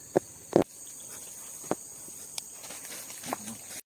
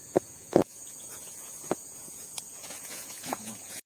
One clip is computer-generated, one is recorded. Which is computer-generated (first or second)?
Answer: second